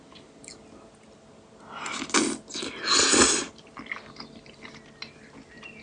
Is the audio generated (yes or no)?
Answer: no